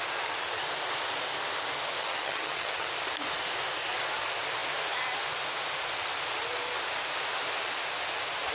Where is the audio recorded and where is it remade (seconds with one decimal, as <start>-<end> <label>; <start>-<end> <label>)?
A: 0.0-2.0 recorded; 2.0-2.9 remade; 2.9-8.5 recorded